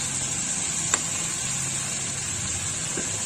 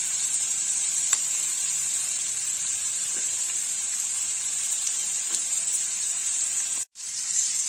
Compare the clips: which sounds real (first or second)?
first